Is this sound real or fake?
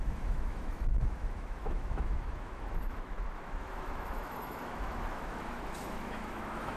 fake